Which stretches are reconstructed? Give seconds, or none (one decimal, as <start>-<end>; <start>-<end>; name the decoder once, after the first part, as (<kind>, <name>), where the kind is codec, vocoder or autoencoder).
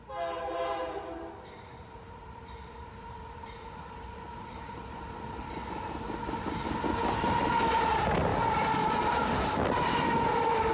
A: 1.7-5.5 (vocoder, BigVGAN v2)